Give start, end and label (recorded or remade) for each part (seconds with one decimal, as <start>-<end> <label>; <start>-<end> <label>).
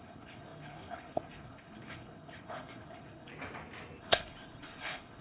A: 0.0-3.3 remade; 3.3-4.0 recorded; 4.0-5.2 remade